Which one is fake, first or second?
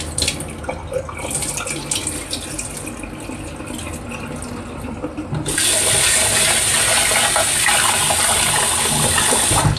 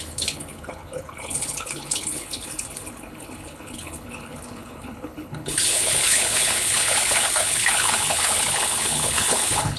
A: second